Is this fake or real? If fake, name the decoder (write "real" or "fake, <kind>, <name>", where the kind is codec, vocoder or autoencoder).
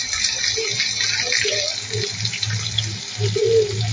real